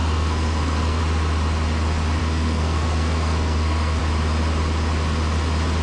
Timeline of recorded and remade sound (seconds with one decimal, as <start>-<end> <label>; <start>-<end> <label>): 0.0-1.0 remade; 1.0-2.2 recorded; 2.2-4.0 remade; 4.0-5.8 recorded